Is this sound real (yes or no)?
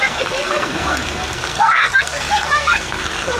no